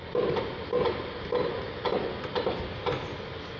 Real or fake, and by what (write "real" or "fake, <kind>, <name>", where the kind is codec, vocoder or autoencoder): real